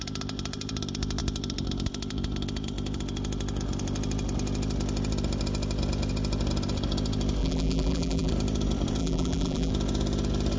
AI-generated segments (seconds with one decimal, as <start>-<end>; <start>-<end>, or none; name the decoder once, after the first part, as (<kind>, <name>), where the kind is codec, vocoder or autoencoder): 7.4-8.3 (vocoder, BigVGAN v2); 9.0-9.7